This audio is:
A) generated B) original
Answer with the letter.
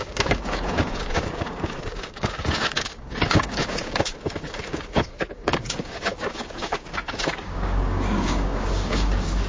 A